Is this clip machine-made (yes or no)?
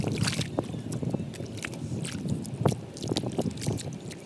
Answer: no